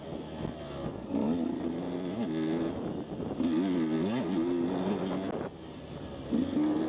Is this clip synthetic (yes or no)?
no